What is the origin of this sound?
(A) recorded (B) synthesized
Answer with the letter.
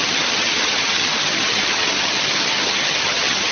B